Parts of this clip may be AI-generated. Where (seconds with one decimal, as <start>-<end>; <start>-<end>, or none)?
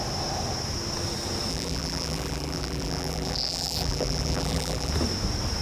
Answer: 1.5-4.9